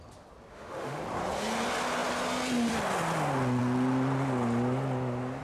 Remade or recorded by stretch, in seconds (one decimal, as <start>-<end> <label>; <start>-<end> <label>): 0.0-0.5 recorded; 0.5-1.0 remade; 1.0-5.4 recorded